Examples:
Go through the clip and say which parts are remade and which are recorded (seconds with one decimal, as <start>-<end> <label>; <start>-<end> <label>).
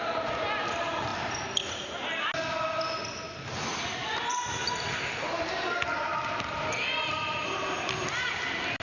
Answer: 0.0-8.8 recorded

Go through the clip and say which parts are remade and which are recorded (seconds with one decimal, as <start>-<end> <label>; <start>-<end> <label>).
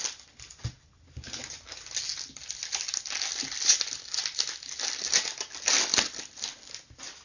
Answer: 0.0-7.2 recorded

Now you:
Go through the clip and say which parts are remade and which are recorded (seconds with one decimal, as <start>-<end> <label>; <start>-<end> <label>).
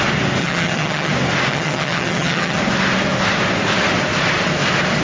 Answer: 0.0-0.4 recorded; 0.4-1.1 remade; 1.1-1.5 recorded; 1.5-2.6 remade; 2.6-5.0 recorded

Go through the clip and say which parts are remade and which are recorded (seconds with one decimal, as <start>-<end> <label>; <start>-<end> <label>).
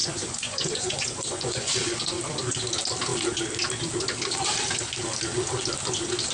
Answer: 0.0-2.2 remade; 2.2-6.3 recorded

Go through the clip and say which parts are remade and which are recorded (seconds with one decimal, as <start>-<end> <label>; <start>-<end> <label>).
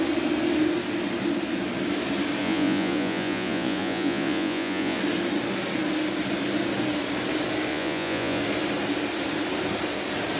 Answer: 0.0-2.4 recorded; 2.4-5.0 remade; 5.0-7.7 recorded; 7.7-8.4 remade; 8.4-10.4 recorded